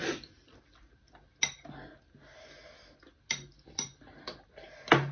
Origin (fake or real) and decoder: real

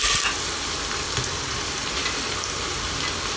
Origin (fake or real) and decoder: real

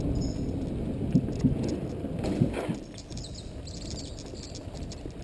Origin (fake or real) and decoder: real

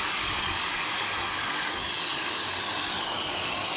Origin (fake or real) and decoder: fake, codec, DAC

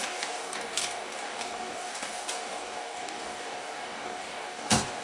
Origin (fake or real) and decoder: fake, codec, DAC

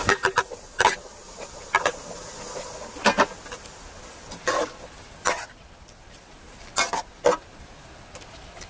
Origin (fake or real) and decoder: real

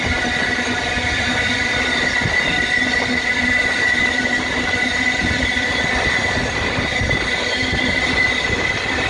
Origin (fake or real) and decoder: real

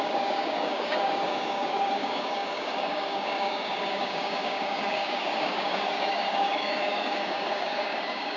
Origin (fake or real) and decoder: fake, codec, DAC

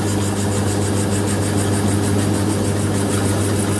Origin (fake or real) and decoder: real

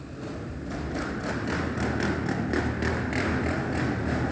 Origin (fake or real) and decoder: real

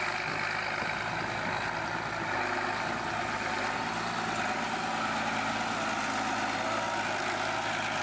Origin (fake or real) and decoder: real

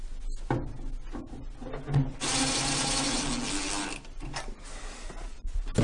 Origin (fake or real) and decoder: real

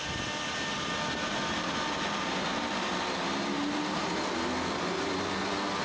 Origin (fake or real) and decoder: real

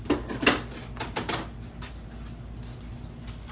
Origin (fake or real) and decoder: real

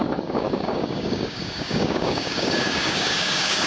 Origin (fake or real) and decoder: fake, codec, DAC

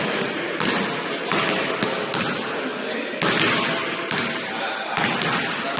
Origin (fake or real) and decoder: real